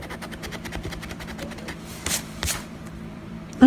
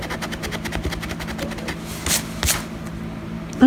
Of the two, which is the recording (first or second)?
second